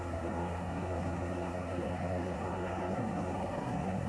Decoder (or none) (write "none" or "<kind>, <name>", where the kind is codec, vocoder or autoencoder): codec, SNAC